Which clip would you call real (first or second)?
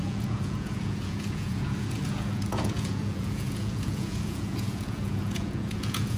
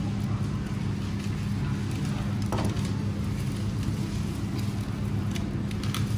second